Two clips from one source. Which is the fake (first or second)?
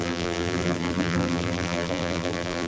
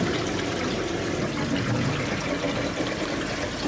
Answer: first